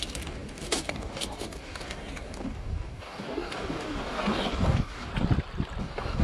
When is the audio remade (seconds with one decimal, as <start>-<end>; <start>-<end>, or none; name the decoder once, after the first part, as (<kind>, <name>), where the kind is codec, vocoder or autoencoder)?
0.0-5.1 (codec, DAC); 5.8-6.2